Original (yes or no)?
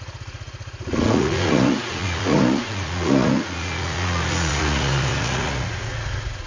no